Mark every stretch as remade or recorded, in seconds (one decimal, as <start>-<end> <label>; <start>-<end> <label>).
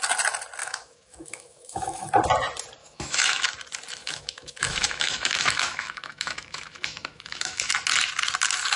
0.0-0.6 recorded; 0.6-2.1 remade; 2.1-2.8 recorded; 2.8-3.5 remade; 3.5-4.0 recorded; 4.0-7.7 remade; 7.7-8.8 recorded